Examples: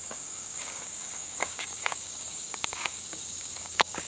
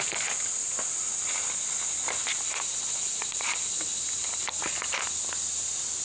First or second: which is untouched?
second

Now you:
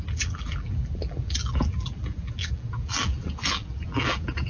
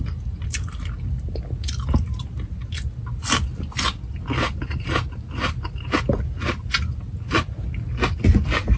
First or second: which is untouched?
second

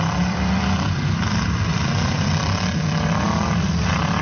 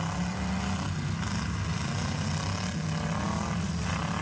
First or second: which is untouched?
second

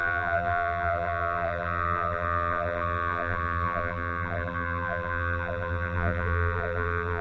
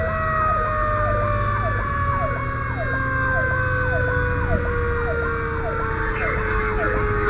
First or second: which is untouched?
second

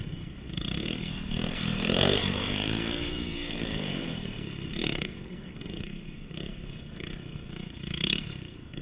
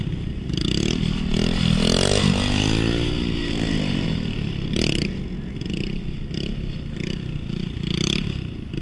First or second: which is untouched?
second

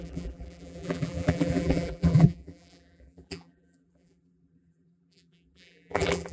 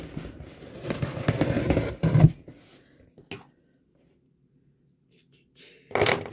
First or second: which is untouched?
second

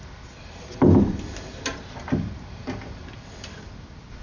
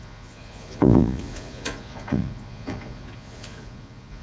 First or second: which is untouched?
first